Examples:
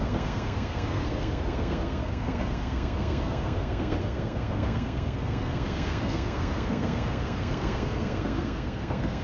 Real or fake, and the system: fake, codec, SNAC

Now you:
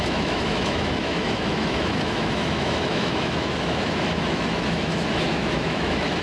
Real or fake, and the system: fake, autoencoder, DAC-VAE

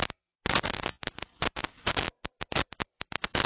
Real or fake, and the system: real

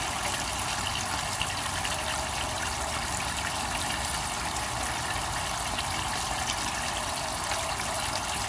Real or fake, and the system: real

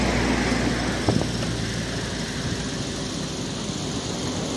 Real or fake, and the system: real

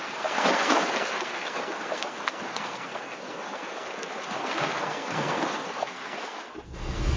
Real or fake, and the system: fake, codec, SNAC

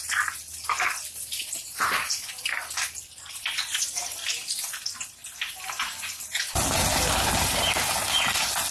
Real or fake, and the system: real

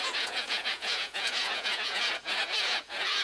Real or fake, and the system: fake, vocoder, Vocos